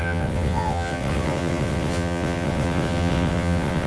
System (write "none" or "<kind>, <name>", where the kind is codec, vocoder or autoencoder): vocoder, WaveNeXt